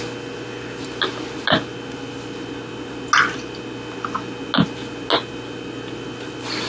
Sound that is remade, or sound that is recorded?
recorded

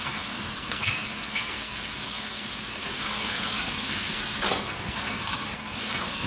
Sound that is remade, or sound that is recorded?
remade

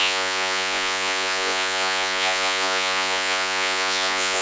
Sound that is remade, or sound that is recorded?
remade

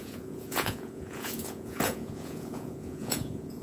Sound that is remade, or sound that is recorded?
remade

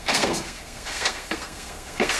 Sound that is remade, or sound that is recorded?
remade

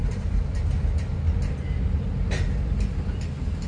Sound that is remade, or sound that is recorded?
remade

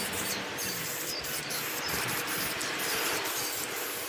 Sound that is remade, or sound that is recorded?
remade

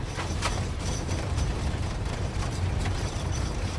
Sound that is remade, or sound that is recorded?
remade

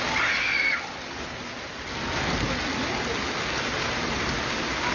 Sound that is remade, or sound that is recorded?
recorded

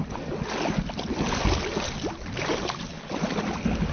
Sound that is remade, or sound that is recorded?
recorded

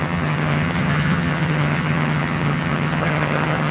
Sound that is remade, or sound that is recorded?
remade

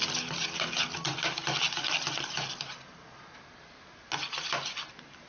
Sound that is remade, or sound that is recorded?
recorded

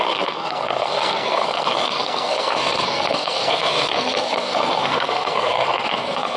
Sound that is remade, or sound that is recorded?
remade